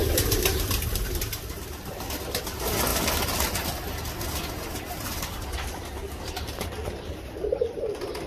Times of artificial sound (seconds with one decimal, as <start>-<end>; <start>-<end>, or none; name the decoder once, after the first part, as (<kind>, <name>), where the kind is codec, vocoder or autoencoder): none